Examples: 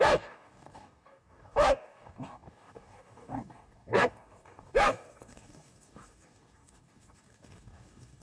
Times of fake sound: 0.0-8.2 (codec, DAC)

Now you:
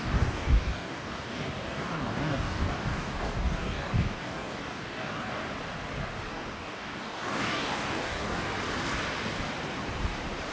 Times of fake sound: 0.0-5.4 (codec, DAC); 6.3-8.5